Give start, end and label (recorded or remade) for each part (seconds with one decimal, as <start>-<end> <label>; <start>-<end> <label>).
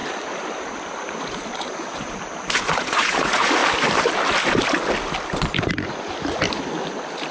0.0-2.8 recorded; 2.8-3.6 remade; 3.6-7.3 recorded